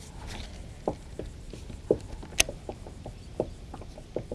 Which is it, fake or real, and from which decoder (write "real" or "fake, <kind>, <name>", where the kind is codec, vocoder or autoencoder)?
real